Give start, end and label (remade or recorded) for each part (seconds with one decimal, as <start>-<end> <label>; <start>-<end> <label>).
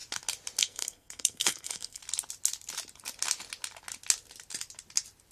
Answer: 0.0-0.6 recorded; 0.6-2.0 remade; 2.0-5.3 recorded